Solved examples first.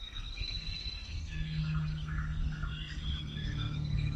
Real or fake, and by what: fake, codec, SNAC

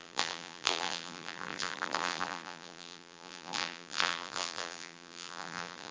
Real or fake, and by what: fake, vocoder, BigVGAN v2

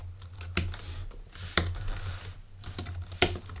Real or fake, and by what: real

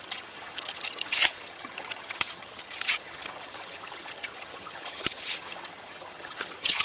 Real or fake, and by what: fake, vocoder, HiFi-GAN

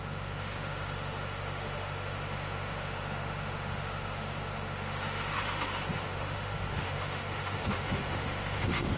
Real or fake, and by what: fake, autoencoder, DAC-VAE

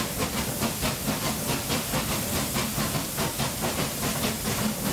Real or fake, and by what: real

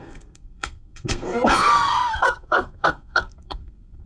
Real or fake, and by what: fake, codec, SNAC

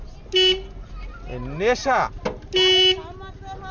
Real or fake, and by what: real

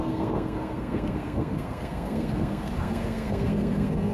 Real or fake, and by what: fake, codec, SNAC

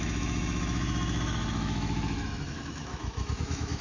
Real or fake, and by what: fake, autoencoder, DAC-VAE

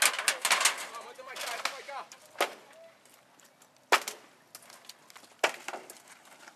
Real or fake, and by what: real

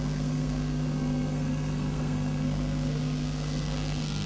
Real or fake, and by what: fake, codec, SNAC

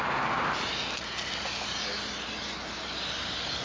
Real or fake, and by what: real